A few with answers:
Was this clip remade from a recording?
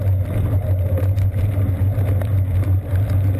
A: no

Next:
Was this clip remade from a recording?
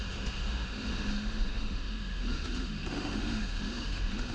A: yes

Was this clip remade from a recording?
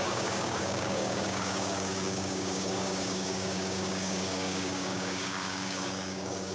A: yes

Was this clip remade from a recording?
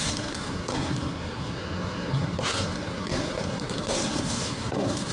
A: yes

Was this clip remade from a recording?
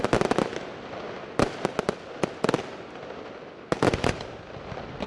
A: no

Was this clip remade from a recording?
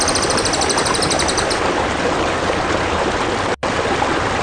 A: yes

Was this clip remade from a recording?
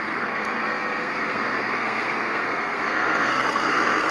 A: yes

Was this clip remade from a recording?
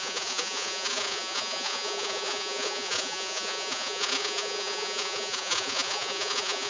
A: yes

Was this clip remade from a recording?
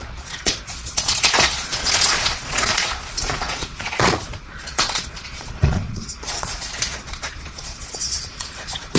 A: yes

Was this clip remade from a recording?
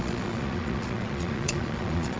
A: yes